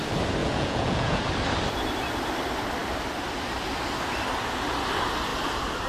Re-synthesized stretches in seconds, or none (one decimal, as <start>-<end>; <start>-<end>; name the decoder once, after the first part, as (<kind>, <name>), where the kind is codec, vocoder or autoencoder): 0.4-1.2 (vocoder, Vocos)